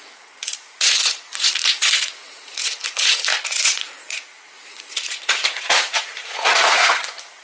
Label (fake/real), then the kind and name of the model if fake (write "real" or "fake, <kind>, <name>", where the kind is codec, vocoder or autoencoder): fake, vocoder, Vocos